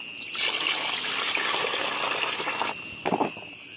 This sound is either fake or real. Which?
real